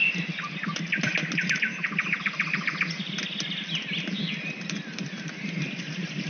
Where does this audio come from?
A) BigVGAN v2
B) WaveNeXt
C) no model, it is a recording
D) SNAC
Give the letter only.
C